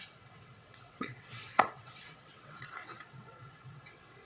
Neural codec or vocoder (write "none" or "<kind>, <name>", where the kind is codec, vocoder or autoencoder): vocoder, WaveNeXt